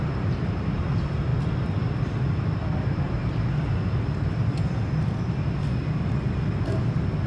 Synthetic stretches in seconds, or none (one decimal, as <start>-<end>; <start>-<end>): 0.0-1.3; 2.8-3.2